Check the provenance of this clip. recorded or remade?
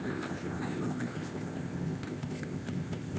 remade